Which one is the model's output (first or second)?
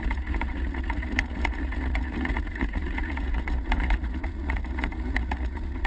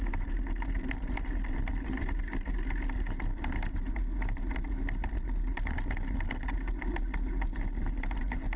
first